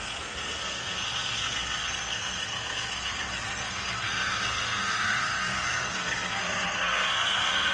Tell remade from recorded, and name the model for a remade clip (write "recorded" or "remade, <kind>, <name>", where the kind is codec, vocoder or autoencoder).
remade, codec, SNAC